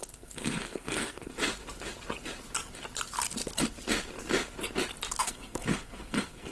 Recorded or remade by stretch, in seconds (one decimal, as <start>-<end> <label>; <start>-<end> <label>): 0.0-1.3 remade; 1.3-5.2 recorded; 5.2-6.5 remade